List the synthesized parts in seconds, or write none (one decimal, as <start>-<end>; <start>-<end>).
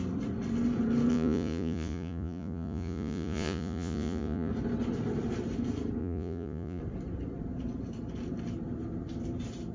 1.1-4.5; 6.0-6.8